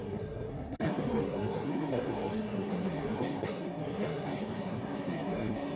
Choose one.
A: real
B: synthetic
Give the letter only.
B